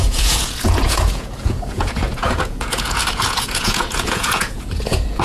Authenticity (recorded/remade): remade